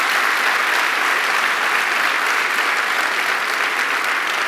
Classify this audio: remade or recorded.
recorded